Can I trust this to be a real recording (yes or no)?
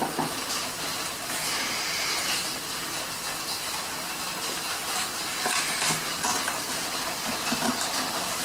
yes